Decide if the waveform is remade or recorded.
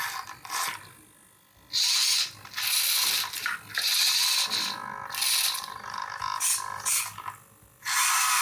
recorded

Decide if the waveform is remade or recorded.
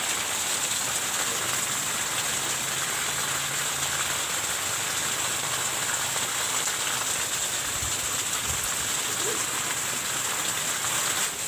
recorded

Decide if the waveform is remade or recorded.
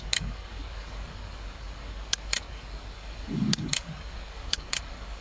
remade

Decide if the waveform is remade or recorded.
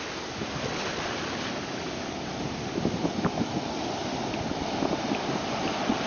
remade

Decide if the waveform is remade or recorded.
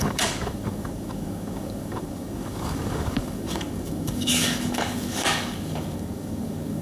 remade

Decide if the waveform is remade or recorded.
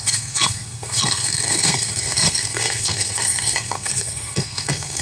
remade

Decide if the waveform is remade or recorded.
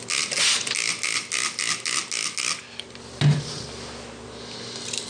recorded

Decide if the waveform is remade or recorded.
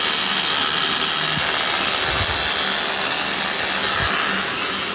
recorded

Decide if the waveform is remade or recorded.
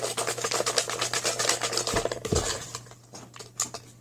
recorded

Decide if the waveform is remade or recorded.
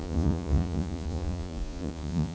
remade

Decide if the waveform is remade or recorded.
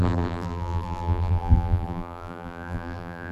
remade